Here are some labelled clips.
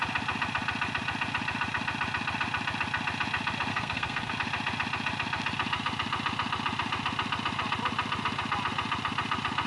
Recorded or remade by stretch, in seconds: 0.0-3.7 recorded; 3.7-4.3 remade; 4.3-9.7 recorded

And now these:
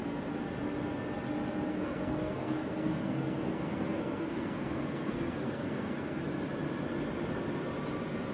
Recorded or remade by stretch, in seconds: 0.0-1.7 recorded; 1.7-6.2 remade; 6.2-8.3 recorded